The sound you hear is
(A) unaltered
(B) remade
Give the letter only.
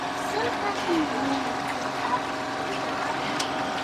A